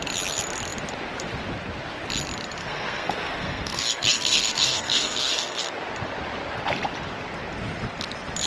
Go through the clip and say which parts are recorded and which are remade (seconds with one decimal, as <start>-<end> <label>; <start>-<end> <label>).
0.0-2.6 recorded; 2.6-5.7 remade; 5.7-8.5 recorded